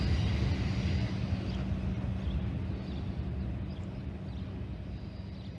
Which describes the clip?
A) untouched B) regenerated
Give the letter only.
A